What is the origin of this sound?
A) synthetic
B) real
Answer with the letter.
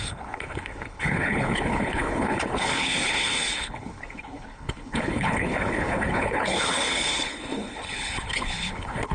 A